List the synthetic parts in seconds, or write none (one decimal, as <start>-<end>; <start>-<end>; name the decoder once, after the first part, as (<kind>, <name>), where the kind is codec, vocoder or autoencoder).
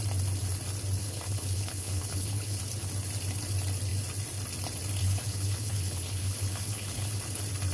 1.0-2.6 (codec, HILCodec); 5.0-7.2